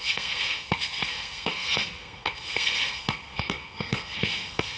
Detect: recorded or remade remade